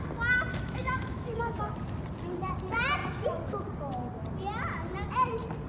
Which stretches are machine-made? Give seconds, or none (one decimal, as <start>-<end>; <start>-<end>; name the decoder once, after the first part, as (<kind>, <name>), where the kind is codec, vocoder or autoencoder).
0.5-1.6 (autoencoder, DAC-VAE)